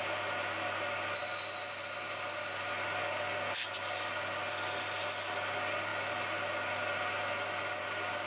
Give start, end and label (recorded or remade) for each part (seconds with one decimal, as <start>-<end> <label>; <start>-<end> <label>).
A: 0.0-8.3 recorded